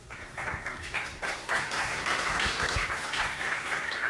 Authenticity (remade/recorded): remade